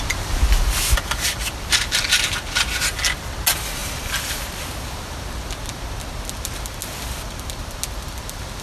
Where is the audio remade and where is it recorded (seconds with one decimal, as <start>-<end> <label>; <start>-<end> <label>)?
0.0-8.6 recorded